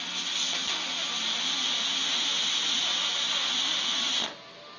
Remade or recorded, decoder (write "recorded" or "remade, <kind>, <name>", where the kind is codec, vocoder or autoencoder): recorded